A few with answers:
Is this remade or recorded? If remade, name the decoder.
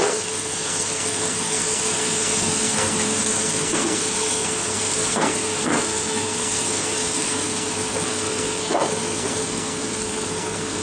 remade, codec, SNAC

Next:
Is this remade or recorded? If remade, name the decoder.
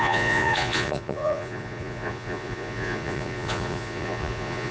remade, vocoder, Vocos